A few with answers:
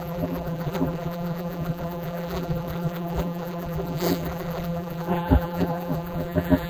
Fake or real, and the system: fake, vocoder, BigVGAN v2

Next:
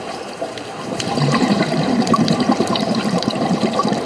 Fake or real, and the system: fake, vocoder, BigVGAN v2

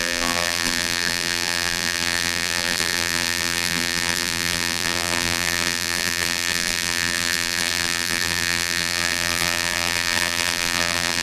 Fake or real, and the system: fake, vocoder, BigVGAN v2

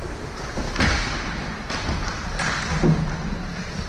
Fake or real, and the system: real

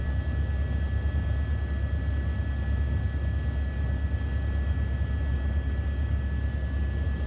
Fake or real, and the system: real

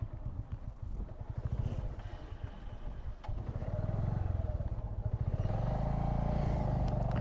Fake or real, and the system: real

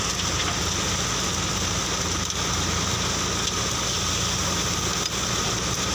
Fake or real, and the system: real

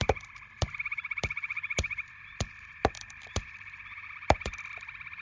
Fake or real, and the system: fake, vocoder, BigVGAN v2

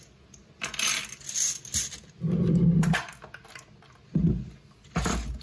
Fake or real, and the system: real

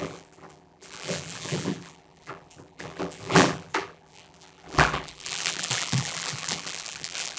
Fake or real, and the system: fake, vocoder, BigVGAN v2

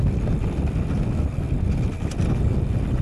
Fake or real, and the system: fake, vocoder, BigVGAN v2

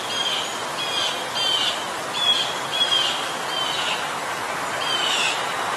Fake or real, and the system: real